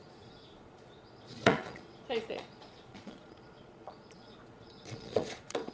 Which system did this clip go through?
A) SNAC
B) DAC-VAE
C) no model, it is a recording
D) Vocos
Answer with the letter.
D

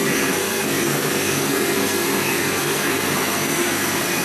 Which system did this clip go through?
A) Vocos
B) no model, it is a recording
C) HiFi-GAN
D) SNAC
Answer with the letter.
D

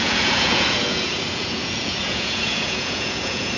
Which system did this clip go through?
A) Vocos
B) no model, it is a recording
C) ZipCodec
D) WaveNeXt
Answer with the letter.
A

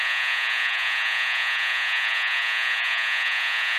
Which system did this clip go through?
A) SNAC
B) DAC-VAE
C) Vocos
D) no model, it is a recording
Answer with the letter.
C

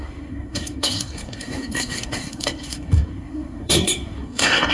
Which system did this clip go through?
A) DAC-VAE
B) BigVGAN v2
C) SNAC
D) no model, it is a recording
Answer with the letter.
C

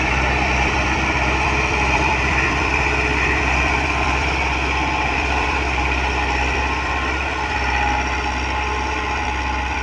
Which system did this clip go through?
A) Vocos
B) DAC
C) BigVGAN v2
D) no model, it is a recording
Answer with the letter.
C